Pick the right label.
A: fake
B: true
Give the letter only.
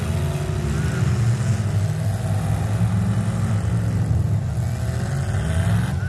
B